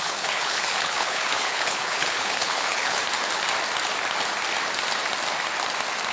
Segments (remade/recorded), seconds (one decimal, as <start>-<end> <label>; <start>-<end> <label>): 0.0-3.0 remade; 3.0-6.1 recorded